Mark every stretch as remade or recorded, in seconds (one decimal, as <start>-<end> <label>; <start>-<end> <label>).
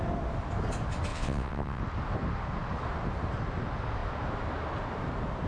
0.0-1.1 recorded; 1.1-1.8 remade; 1.8-5.5 recorded